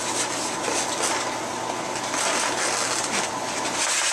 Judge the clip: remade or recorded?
recorded